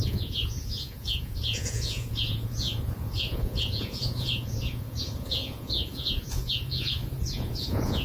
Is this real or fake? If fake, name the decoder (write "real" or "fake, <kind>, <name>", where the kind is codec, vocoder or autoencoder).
fake, vocoder, Vocos